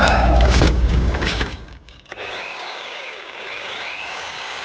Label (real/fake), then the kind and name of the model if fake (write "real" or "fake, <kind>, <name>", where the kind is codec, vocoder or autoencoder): fake, codec, DAC